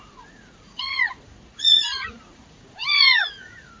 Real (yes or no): no